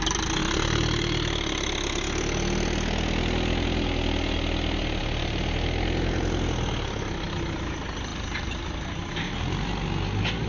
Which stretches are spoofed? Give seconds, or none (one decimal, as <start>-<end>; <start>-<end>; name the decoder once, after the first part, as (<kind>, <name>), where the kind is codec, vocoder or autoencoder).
8.1-8.6 (vocoder, BigVGAN v2)